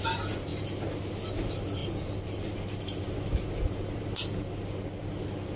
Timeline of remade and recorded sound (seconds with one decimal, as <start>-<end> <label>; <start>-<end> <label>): 0.0-5.6 recorded

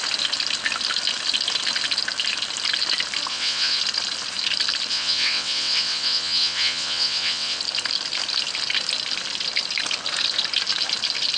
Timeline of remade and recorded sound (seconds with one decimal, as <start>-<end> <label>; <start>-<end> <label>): 0.0-3.3 recorded; 3.3-3.8 remade; 3.8-4.9 recorded; 4.9-7.6 remade; 7.6-11.4 recorded

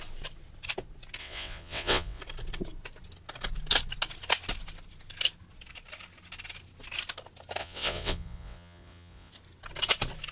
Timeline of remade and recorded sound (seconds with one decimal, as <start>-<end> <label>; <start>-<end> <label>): 0.0-1.2 recorded; 1.2-2.2 remade; 2.2-7.6 recorded; 7.6-9.3 remade; 9.3-10.3 recorded

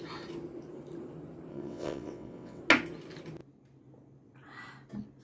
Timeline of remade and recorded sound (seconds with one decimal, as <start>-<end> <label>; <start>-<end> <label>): 0.0-1.5 recorded; 1.5-2.6 remade; 2.6-5.2 recorded